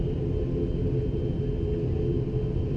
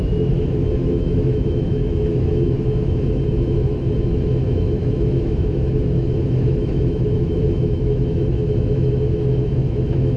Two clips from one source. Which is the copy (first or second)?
second